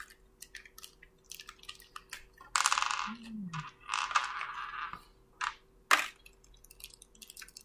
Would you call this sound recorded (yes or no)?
yes